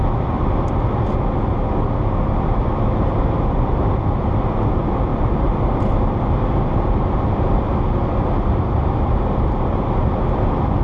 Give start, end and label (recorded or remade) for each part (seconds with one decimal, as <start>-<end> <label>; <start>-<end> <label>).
0.0-5.1 recorded; 5.1-7.7 remade; 7.7-8.5 recorded; 8.5-10.1 remade; 10.1-10.8 recorded